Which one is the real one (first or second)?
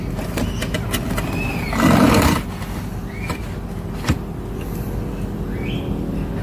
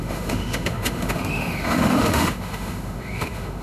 first